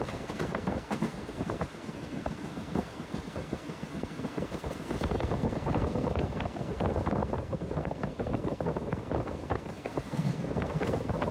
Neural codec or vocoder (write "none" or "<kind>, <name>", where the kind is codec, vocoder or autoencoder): codec, SNAC